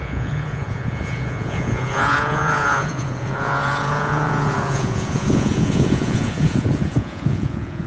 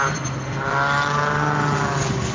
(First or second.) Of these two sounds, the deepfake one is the first